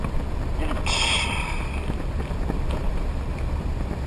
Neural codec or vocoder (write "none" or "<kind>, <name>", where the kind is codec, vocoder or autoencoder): none